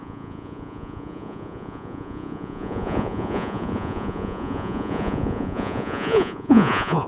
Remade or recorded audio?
remade